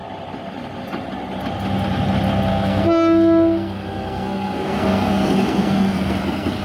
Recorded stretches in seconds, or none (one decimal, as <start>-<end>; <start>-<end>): 0.0-2.5